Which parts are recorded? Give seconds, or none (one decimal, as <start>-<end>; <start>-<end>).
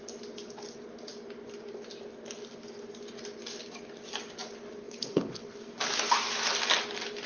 0.0-4.8; 5.8-7.3